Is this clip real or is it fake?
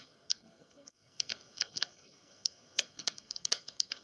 fake